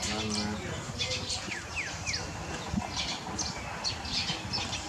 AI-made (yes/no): no